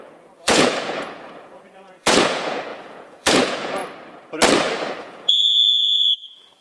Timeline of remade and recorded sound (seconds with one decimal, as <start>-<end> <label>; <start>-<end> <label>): 0.0-3.8 remade; 3.8-4.9 recorded; 4.9-6.6 remade